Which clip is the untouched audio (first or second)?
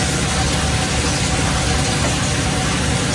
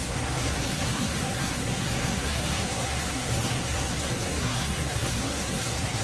first